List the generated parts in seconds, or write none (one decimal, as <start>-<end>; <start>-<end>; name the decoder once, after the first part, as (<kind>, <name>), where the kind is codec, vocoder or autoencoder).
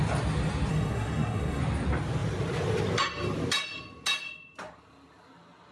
0.7-1.6 (codec, SNAC)